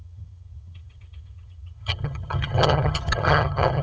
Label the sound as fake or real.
fake